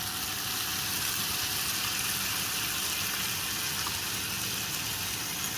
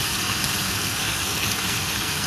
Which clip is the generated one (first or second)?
second